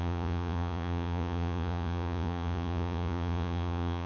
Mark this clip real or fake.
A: fake